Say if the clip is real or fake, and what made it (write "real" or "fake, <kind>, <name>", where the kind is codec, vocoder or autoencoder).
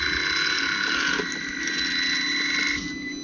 real